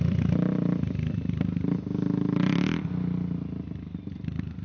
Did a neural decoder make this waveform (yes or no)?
no